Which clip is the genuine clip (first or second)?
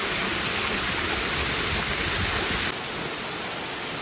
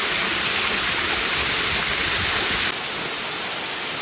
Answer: first